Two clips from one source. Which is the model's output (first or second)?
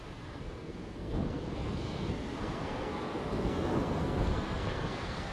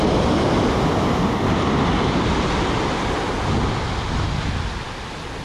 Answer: first